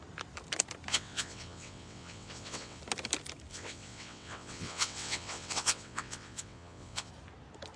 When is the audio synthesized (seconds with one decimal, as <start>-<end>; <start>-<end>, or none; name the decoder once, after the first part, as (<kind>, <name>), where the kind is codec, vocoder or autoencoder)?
0.9-2.8 (vocoder, WaveNeXt); 3.5-7.1